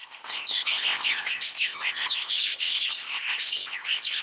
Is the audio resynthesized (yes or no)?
yes